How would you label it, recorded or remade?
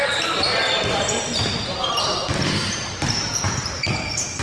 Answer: remade